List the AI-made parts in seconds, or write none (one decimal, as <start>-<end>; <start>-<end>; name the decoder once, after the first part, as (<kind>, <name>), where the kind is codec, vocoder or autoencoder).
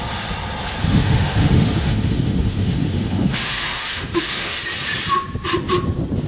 0.8-4.6 (autoencoder, DAC-VAE)